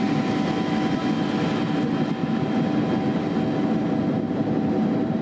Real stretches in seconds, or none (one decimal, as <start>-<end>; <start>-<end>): 0.0-5.2